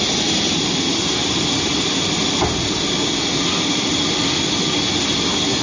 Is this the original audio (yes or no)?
yes